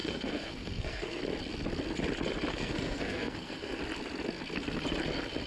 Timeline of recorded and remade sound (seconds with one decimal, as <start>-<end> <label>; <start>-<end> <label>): 0.0-1.2 remade; 1.2-2.5 recorded; 2.5-3.8 remade; 3.8-5.5 recorded